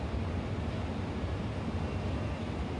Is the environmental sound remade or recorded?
recorded